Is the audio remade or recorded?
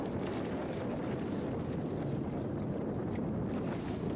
recorded